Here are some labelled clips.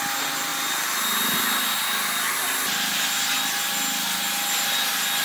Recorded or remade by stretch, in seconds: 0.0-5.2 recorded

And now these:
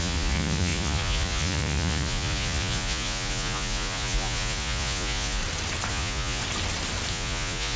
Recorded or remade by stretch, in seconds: 0.0-5.4 remade; 5.4-5.9 recorded; 5.9-6.4 remade; 6.4-7.1 recorded; 7.1-7.8 remade

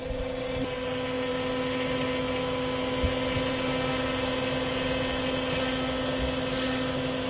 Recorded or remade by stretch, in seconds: 0.0-7.3 recorded